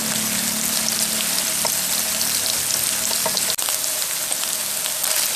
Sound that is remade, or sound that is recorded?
recorded